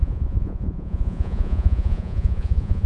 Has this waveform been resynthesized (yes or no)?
yes